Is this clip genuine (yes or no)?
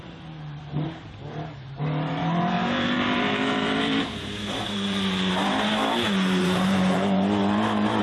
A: no